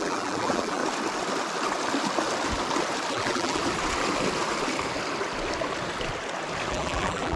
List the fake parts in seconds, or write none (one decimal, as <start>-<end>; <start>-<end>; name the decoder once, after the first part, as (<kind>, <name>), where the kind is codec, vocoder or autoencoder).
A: 0.0-0.8 (vocoder, BigVGAN v2); 3.1-3.6; 6.7-7.4